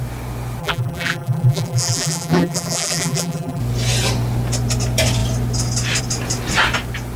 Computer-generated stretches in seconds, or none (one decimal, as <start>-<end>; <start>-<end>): 0.6-3.6